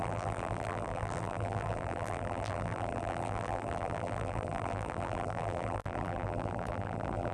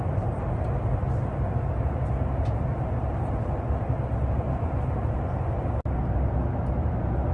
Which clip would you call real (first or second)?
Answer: second